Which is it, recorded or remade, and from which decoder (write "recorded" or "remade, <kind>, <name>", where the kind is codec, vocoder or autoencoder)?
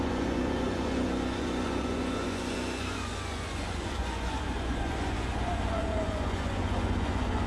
remade, vocoder, Vocos